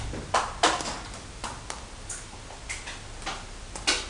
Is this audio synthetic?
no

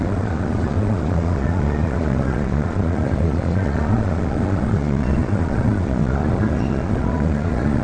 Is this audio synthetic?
yes